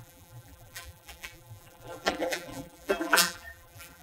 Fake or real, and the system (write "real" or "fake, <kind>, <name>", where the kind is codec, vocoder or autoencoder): fake, vocoder, BigVGAN v2